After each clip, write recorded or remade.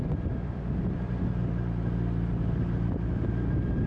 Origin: recorded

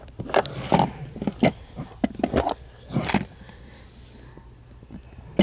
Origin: remade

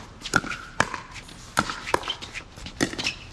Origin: remade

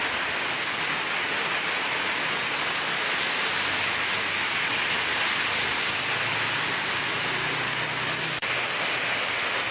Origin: recorded